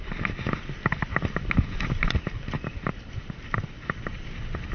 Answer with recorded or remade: recorded